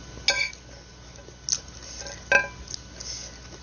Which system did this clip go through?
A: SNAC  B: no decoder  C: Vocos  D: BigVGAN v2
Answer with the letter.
B